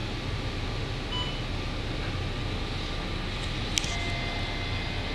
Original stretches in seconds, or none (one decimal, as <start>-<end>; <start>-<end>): 0.0-5.1